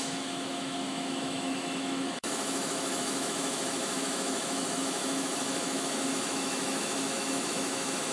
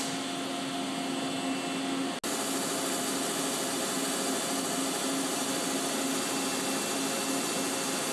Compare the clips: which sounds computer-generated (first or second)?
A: first